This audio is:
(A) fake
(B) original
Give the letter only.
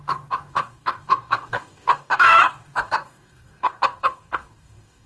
A